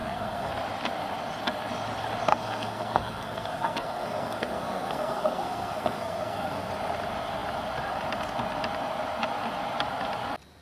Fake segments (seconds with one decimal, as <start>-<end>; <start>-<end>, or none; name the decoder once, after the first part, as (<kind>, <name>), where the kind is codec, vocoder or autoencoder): 0.0-0.5 (codec, SNAC); 2.3-6.7